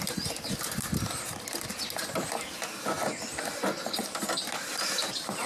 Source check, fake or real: real